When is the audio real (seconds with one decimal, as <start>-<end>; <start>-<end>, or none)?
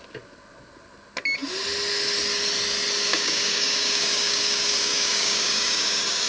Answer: 0.0-3.1